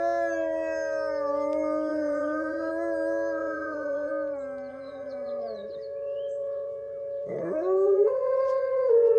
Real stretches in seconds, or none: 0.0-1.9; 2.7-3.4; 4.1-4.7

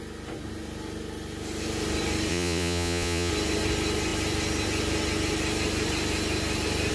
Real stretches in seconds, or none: 0.0-2.3; 3.3-6.9

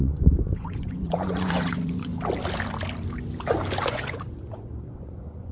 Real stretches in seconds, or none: 2.1-3.9

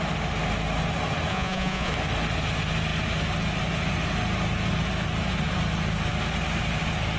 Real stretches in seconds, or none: 0.0-1.3; 1.9-7.2

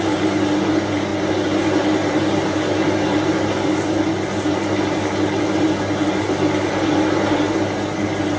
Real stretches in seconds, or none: 0.0-8.4

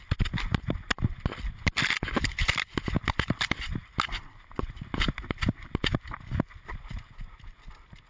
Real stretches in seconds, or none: 0.0-8.1